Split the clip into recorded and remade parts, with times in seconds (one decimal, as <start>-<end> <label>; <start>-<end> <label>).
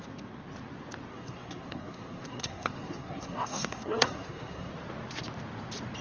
0.0-1.1 recorded; 1.1-4.7 remade; 4.7-6.0 recorded